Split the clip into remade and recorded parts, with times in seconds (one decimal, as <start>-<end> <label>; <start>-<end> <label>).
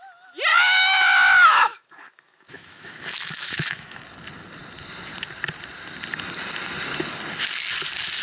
0.0-0.5 recorded; 0.5-4.0 remade; 4.0-8.2 recorded